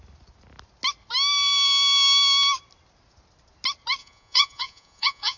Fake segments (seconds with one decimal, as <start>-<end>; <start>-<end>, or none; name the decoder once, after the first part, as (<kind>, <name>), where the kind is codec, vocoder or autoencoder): 4.0-5.4 (vocoder, Vocos)